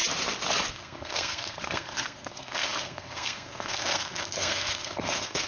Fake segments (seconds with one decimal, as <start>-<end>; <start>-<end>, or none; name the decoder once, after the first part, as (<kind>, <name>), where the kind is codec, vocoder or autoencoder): 0.7-5.5 (codec, SNAC)